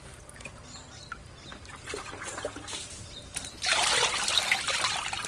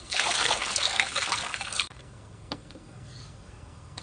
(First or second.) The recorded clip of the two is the first